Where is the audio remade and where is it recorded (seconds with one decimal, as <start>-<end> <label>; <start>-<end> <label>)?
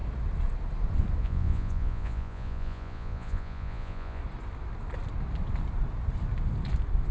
0.0-1.2 recorded; 1.2-4.2 remade; 4.2-7.1 recorded